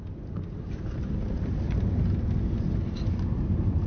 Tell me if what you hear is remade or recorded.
recorded